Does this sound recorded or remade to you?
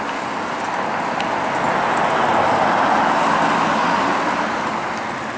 recorded